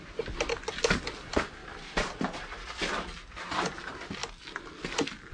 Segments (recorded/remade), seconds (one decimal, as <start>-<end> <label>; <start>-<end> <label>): 0.0-1.6 recorded; 1.6-2.7 remade; 2.7-5.3 recorded